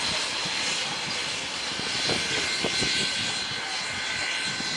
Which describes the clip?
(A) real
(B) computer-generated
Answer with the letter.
A